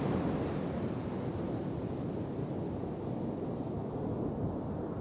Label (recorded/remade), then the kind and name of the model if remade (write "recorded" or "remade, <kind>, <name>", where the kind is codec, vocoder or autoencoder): recorded